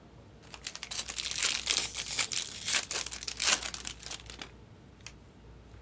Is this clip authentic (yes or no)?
yes